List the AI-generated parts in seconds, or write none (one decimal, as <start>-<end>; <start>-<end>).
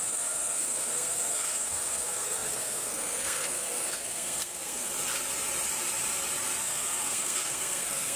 0.0-4.9; 6.6-8.2